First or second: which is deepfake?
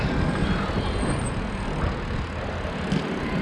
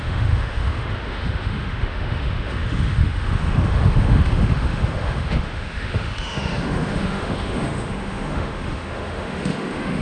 second